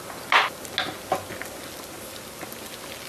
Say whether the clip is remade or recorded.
recorded